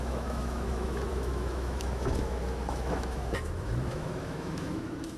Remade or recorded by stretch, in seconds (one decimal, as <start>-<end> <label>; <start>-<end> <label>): 0.0-5.2 remade